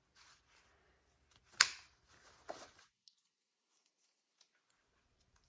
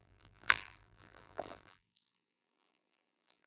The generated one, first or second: second